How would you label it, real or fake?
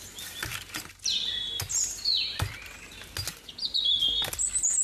real